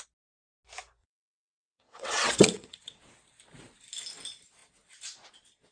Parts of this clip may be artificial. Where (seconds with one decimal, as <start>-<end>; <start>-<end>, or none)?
1.0-3.0